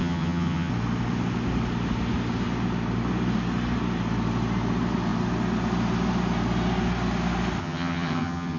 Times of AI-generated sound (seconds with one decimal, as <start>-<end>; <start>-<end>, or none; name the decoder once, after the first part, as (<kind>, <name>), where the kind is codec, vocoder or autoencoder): 0.0-0.7 (vocoder, HiFi-GAN); 7.6-8.6

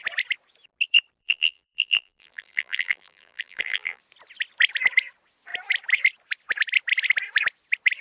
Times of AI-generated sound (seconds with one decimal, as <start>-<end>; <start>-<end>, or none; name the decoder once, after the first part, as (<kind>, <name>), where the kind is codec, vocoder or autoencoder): 1.2-4.0 (vocoder, BigVGAN v2)

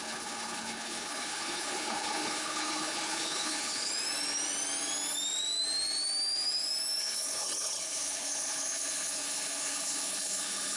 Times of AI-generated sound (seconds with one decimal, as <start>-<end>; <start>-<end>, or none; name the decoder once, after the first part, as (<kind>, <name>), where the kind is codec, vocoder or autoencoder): 0.0-3.9 (codec, HILCodec); 7.0-10.8

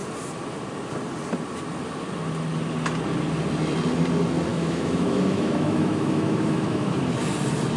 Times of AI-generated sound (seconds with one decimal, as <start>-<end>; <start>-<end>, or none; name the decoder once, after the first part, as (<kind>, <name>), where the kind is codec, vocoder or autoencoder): 4.5-7.0 (autoencoder, DAC-VAE)

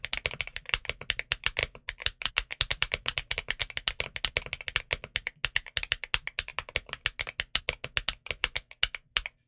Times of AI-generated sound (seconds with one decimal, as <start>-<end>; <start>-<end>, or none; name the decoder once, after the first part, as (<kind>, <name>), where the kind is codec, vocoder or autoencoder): none

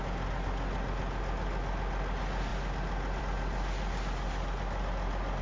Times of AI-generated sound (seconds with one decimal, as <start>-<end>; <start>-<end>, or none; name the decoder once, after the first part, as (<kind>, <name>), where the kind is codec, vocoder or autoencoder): none

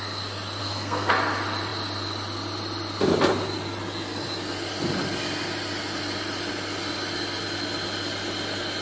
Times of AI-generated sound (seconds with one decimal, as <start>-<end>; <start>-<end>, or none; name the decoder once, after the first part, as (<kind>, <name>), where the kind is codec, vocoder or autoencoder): 0.6-1.1 (codec, SNAC)

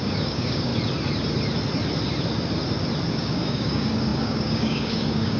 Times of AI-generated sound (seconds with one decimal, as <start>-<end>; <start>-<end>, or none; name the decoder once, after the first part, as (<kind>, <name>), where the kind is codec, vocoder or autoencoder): 0.0-0.7 (codec, DAC); 3.1-5.4